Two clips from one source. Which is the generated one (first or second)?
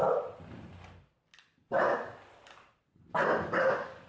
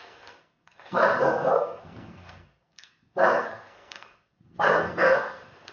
second